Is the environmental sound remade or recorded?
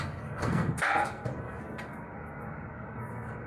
remade